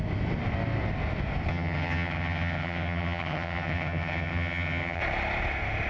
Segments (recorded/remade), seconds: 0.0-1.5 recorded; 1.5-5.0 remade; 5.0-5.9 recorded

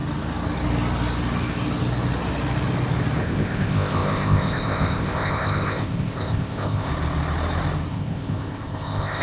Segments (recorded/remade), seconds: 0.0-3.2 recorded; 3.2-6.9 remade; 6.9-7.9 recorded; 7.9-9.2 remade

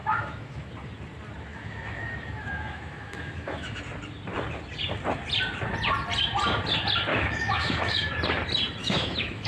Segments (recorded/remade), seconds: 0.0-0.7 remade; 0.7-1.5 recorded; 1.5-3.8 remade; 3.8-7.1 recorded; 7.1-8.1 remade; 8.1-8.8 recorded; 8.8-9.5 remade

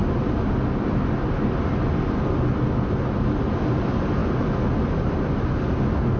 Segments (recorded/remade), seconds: 0.0-6.2 recorded

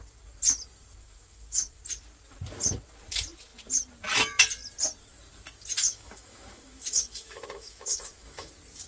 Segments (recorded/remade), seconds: 0.0-1.0 recorded; 1.0-1.8 remade; 1.8-5.9 recorded; 5.9-8.5 remade; 8.5-8.9 recorded

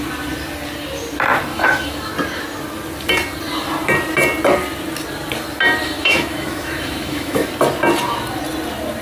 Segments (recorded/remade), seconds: 0.0-1.5 recorded; 1.5-2.1 remade; 2.1-5.8 recorded; 5.8-7.5 remade; 7.5-9.0 recorded

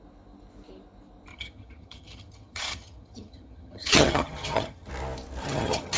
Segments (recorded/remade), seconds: 0.0-1.3 recorded; 1.3-4.9 remade; 4.9-5.4 recorded; 5.4-6.0 remade